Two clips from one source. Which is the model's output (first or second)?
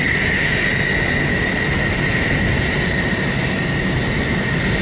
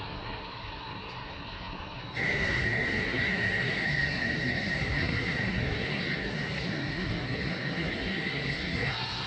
second